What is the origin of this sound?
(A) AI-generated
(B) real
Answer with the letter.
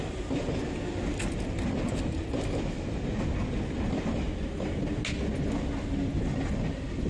B